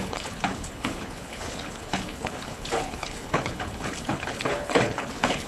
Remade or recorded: remade